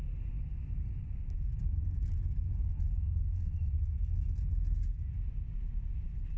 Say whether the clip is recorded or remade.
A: recorded